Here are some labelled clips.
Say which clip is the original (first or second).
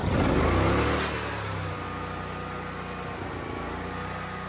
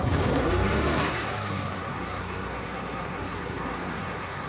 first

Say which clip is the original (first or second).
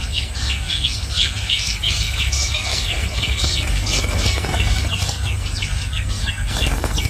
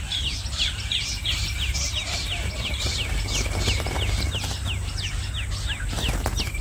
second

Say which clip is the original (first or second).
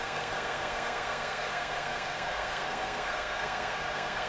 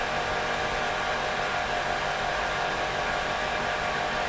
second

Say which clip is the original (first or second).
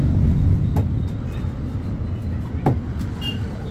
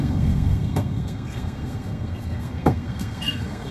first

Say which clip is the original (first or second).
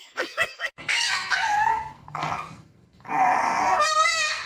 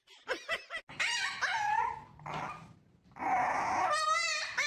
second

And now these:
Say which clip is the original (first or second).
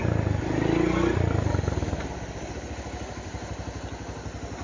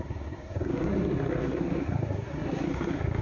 first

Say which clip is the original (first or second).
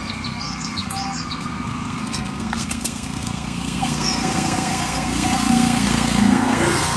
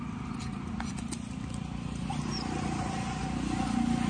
second